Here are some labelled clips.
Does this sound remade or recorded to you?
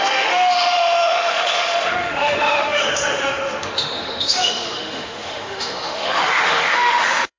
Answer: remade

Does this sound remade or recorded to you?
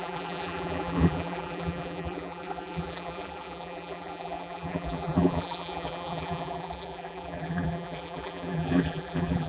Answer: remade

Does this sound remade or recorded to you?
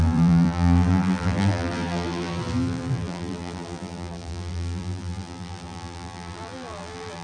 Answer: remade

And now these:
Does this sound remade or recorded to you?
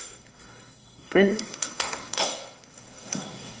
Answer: remade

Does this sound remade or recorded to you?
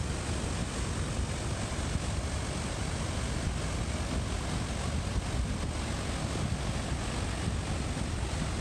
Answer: recorded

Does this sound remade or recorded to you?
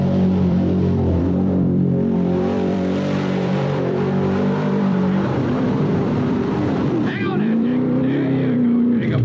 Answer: remade